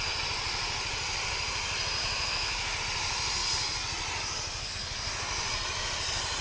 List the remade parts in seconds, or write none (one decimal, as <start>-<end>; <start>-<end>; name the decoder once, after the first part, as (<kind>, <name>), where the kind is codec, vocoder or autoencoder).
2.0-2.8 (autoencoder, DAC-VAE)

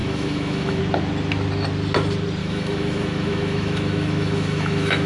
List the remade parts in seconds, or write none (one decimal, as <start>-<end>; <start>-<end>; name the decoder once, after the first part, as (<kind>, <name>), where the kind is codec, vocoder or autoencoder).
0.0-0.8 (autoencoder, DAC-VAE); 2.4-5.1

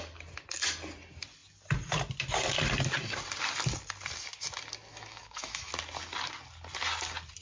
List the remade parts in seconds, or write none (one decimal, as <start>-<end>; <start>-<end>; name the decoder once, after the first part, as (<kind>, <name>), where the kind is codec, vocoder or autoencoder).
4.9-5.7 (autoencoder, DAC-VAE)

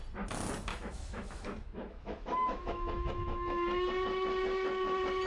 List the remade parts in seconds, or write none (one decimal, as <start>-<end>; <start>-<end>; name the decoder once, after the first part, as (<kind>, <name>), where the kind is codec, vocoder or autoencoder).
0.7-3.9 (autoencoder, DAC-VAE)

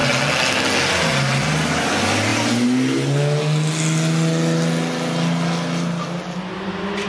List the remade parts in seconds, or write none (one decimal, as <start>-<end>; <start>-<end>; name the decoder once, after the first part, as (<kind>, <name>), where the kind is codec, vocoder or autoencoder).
none

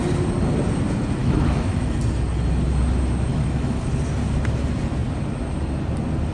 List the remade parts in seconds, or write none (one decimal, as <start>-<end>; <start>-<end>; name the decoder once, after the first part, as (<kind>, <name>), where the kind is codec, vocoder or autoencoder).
1.2-2.0 (autoencoder, DAC-VAE); 3.3-3.9